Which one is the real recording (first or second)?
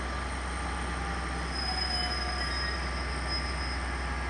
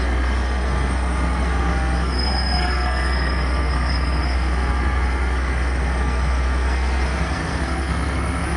first